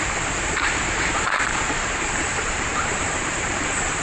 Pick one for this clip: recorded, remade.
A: remade